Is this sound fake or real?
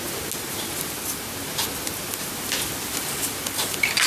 real